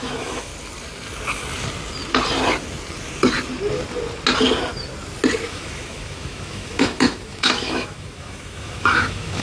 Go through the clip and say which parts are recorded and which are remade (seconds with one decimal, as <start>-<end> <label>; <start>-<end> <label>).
0.0-0.5 remade; 0.5-5.5 recorded; 5.5-9.4 remade